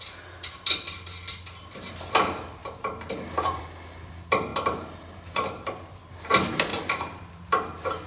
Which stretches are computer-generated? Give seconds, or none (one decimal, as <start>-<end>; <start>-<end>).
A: 2.6-3.6; 4.5-6.3; 6.7-7.5